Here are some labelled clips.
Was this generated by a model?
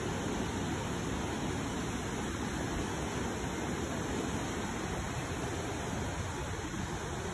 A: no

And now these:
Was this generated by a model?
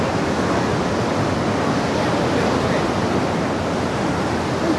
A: no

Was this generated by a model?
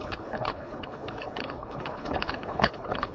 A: yes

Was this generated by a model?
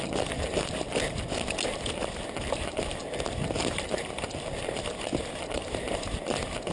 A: no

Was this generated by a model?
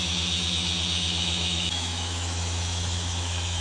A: yes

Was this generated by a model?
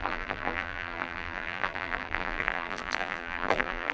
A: yes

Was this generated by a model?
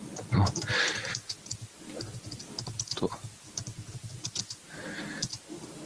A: no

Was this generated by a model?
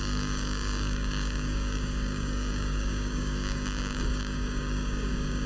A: yes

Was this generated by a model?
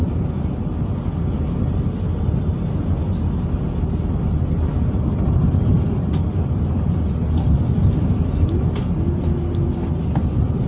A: no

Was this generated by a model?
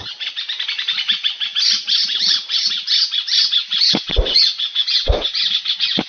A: no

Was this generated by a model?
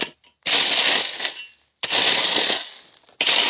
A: no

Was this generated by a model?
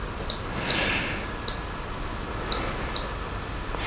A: no